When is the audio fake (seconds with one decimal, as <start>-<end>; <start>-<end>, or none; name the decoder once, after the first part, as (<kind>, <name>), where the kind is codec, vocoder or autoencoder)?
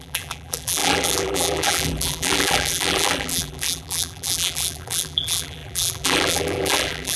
0.0-7.2 (vocoder, BigVGAN v2)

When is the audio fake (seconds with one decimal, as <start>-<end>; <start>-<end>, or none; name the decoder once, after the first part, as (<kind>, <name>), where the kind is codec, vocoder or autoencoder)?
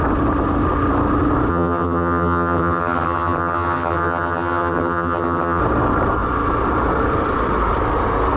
1.5-5.6 (vocoder, HiFi-GAN)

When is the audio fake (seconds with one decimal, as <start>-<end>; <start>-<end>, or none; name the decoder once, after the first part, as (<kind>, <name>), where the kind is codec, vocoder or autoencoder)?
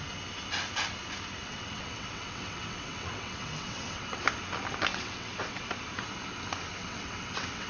1.4-4.2 (vocoder, WaveNeXt); 4.9-5.7; 6.8-7.7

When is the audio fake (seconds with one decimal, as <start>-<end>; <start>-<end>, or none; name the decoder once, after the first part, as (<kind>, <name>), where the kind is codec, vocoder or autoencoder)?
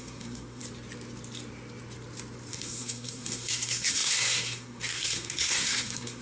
0.0-0.6 (codec, SNAC); 2.5-6.2